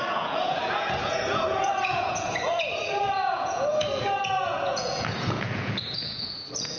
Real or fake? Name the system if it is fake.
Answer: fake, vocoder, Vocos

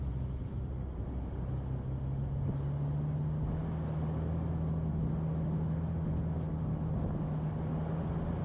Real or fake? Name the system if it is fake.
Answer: real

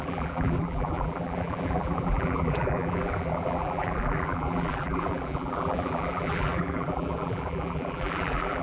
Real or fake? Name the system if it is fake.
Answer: fake, vocoder, BigVGAN v2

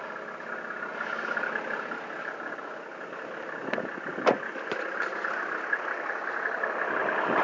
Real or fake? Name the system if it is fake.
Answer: real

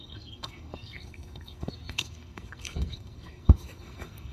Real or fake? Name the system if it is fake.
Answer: fake, codec, SNAC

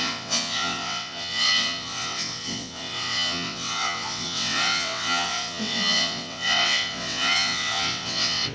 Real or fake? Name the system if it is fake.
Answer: fake, vocoder, WaveNeXt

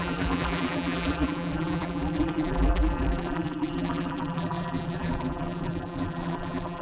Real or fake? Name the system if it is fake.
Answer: fake, vocoder, BigVGAN v2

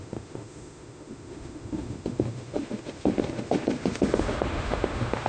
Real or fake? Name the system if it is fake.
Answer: fake, autoencoder, DAC-VAE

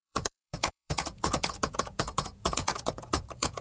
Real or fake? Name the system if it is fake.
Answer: fake, vocoder, Vocos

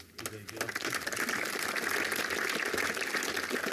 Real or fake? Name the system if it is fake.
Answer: real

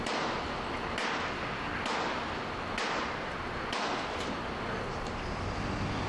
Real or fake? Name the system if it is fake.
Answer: real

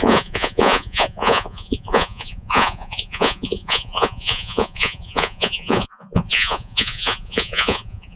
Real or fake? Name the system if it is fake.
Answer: fake, vocoder, Vocos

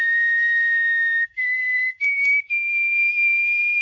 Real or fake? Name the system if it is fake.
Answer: fake, codec, DAC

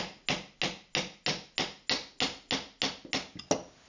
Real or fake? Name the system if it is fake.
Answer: real